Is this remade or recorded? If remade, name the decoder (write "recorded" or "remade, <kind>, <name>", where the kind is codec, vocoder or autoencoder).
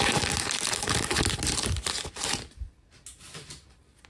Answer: recorded